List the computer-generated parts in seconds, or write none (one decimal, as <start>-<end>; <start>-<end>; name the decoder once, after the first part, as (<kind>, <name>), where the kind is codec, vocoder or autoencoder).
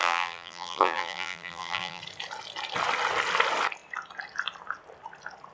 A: 0.0-2.0 (vocoder, BigVGAN v2)